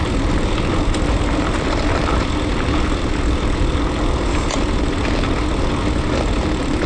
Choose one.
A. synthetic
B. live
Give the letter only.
B